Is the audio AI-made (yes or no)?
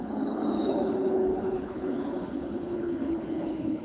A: yes